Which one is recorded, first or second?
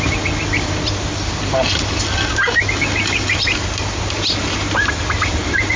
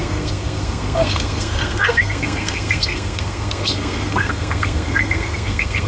first